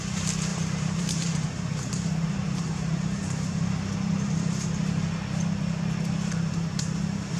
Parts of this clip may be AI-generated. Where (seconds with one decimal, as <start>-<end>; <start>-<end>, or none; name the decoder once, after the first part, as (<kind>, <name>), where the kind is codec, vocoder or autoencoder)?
0.5-4.9 (vocoder, BigVGAN v2)

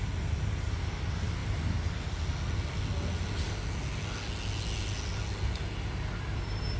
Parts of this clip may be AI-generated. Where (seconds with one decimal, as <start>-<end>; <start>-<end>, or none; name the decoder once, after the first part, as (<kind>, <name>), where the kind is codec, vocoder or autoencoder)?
none